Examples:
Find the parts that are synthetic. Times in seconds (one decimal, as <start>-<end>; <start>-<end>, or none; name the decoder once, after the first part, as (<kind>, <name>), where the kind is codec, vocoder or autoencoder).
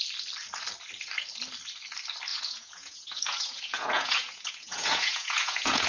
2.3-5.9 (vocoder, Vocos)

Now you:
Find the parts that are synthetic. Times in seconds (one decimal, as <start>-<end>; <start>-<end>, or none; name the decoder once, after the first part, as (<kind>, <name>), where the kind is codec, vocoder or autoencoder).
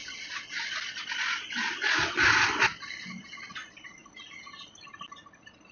none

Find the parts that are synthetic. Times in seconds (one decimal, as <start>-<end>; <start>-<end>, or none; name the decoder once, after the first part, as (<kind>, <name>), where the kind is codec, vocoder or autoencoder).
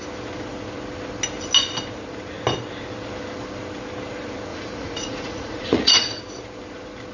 4.5-6.2 (vocoder, Vocos)